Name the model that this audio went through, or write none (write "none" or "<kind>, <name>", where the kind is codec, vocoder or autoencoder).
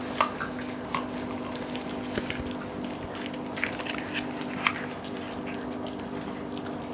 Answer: none